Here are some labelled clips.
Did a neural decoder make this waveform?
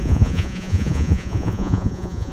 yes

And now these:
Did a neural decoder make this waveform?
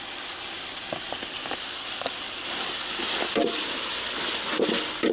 no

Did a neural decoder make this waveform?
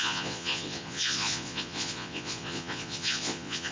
yes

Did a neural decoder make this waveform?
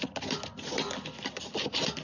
no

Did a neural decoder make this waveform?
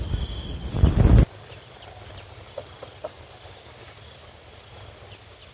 no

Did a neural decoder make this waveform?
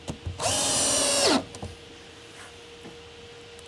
no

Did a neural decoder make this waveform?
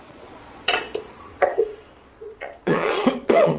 yes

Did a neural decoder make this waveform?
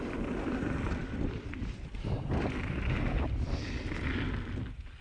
no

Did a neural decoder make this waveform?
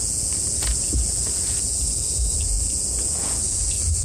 yes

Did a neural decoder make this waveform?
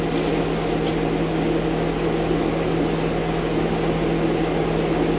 no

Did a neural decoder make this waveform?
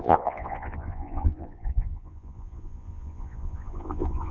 yes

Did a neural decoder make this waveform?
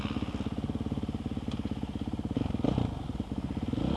no